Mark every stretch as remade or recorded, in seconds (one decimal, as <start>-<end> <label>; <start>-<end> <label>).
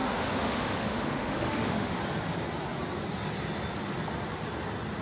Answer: 0.0-2.0 remade; 2.0-5.0 recorded